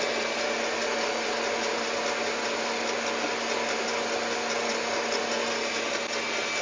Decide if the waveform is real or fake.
real